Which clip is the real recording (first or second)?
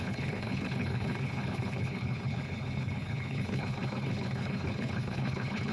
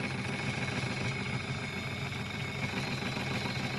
second